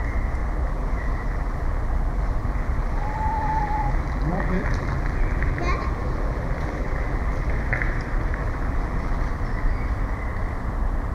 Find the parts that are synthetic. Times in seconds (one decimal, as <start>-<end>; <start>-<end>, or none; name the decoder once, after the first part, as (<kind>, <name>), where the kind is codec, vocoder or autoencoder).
0.4-5.6 (vocoder, BigVGAN v2); 6.0-7.5; 8.4-9.3